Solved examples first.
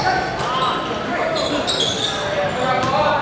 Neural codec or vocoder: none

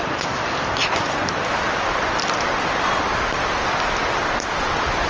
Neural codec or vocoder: none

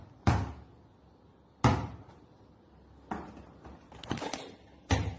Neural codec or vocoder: none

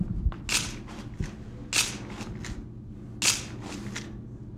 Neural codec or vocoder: none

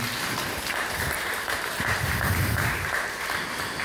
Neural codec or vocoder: vocoder, BigVGAN v2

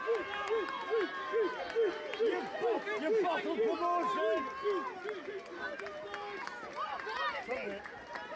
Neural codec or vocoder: none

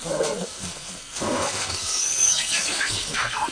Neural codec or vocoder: codec, SNAC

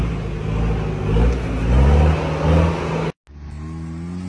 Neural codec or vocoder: none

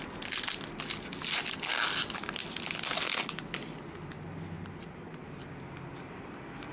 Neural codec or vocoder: none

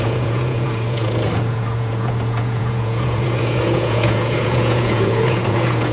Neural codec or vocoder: vocoder, Vocos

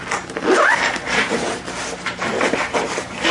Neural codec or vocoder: vocoder, BigVGAN v2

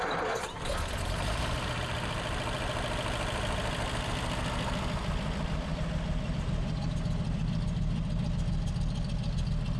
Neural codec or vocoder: none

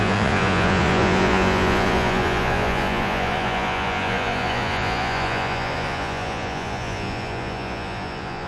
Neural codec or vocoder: vocoder, Vocos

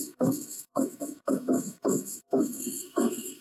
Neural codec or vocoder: codec, SNAC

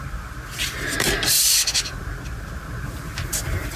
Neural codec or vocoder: none